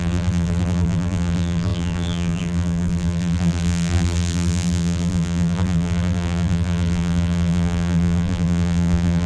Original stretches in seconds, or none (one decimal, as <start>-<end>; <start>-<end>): none